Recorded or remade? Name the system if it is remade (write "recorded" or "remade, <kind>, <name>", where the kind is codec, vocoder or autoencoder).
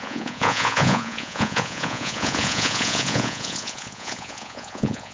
remade, vocoder, Vocos